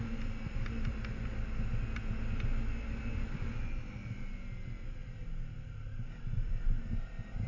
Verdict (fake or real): real